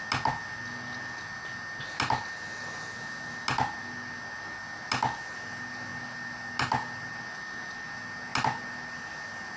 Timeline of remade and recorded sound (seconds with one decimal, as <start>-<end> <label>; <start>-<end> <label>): 0.0-9.6 recorded